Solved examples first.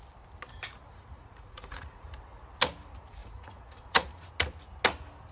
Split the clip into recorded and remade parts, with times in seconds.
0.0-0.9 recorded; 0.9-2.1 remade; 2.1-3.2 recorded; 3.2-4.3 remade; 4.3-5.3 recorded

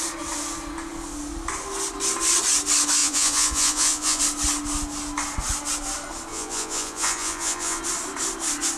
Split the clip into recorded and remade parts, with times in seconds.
0.0-3.0 recorded; 3.0-4.2 remade; 4.2-6.3 recorded; 6.3-7.8 remade; 7.8-8.8 recorded

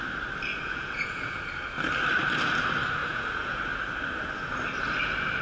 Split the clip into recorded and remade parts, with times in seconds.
0.0-0.5 recorded; 0.5-1.4 remade; 1.4-3.0 recorded; 3.0-3.6 remade; 3.6-5.4 recorded